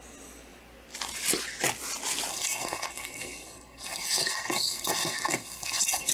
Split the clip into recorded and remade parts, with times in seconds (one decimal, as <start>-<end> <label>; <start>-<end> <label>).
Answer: 0.0-2.3 recorded; 2.3-6.1 remade